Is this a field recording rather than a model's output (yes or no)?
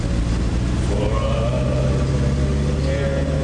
yes